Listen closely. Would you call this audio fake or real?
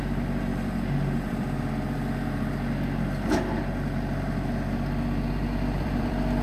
fake